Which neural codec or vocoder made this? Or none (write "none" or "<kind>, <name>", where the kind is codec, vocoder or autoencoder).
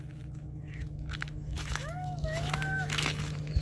autoencoder, DAC-VAE